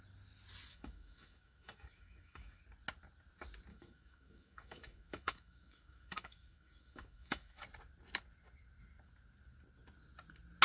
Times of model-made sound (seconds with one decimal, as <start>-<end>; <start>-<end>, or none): 0.7-2.6; 3.7-7.6